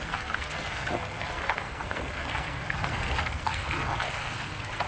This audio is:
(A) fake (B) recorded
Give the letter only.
A